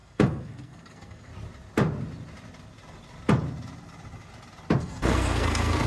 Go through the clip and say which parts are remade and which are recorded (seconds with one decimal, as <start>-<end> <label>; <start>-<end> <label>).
0.0-1.3 remade; 1.3-4.8 recorded; 4.8-5.9 remade